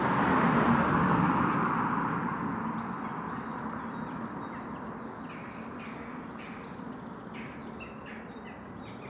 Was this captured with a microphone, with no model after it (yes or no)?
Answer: yes